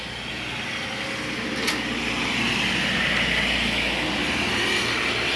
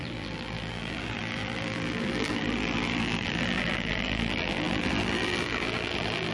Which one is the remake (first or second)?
second